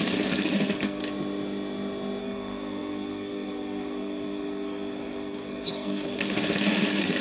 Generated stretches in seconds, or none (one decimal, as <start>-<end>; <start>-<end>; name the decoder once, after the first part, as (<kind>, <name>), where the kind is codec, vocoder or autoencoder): 0.0-1.0 (codec, SNAC); 2.2-7.2

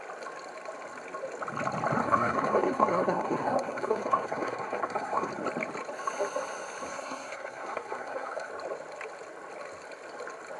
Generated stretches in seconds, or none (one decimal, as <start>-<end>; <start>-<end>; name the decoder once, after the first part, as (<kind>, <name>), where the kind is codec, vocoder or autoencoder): 2.0-5.3 (codec, SNAC); 6.9-8.5

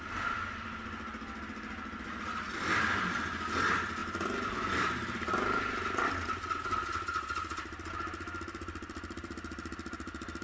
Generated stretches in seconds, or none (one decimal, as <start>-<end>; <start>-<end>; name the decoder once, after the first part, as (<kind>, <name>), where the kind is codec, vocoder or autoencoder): none

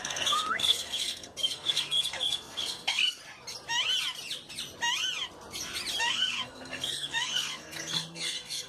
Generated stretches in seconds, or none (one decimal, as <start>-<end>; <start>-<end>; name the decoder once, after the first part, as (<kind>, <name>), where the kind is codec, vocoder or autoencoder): 0.0-3.2 (codec, SNAC); 6.0-8.7

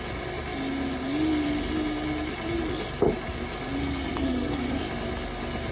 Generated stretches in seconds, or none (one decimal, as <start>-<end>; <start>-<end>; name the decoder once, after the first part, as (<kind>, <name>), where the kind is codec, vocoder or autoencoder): 3.8-4.8 (codec, SNAC)

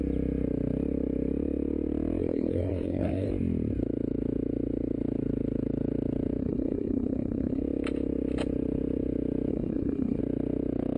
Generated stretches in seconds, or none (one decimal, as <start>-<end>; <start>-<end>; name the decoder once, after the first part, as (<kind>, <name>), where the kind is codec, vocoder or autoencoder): 2.2-3.3 (codec, SNAC); 6.4-7.6; 9.5-10.2

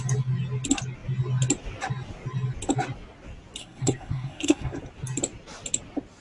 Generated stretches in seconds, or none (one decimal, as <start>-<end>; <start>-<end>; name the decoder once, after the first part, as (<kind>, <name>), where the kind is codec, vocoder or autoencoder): 3.6-4.8 (codec, SNAC)

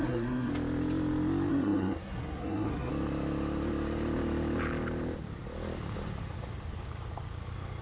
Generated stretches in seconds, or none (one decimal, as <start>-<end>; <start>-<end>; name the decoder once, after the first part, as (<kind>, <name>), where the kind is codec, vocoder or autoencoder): 0.0-0.5 (codec, SNAC); 1.5-2.9